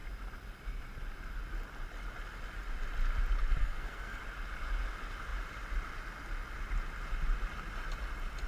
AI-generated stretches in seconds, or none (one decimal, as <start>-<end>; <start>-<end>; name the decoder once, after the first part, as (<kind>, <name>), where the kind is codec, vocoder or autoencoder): 3.6-4.2 (codec, SNAC)